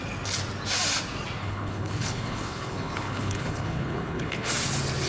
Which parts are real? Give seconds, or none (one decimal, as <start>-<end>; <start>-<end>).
0.0-1.4; 4.5-5.1